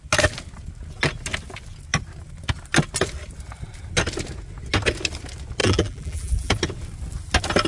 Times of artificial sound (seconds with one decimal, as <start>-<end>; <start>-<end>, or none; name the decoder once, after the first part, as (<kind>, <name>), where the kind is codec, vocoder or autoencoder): 5.6-6.5 (vocoder, BigVGAN v2)